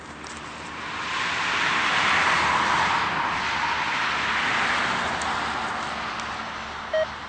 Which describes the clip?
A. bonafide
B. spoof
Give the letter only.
A